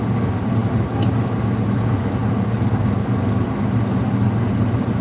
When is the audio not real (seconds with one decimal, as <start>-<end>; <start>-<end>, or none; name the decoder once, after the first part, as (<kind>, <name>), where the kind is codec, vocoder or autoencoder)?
none